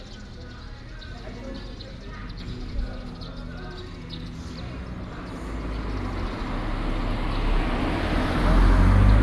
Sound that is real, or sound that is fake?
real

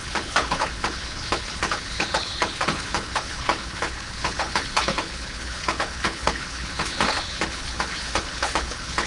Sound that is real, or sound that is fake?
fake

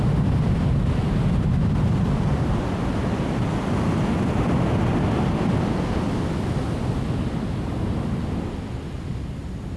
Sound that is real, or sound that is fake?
real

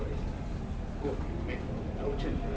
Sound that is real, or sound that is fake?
real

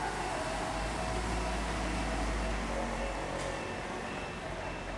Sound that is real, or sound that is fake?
real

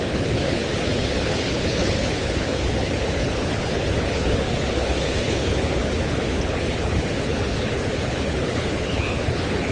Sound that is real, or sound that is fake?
fake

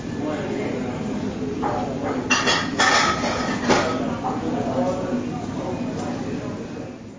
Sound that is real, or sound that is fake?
real